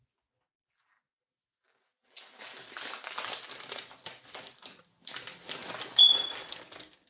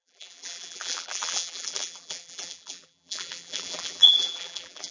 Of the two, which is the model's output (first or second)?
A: second